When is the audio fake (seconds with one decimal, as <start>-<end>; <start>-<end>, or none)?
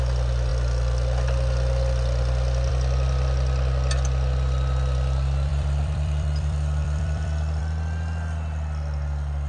5.5-7.6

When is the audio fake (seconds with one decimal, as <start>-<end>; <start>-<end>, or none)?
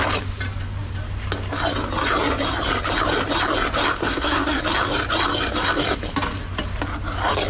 4.0-4.6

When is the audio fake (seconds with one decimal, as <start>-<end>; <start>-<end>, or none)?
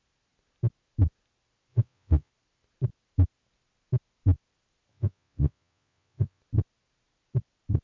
1.7-2.3; 4.9-6.4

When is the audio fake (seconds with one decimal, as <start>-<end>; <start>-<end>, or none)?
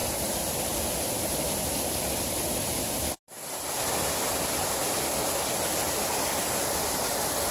none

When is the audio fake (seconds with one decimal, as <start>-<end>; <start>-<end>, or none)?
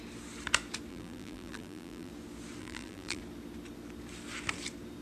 0.9-2.1; 2.6-3.2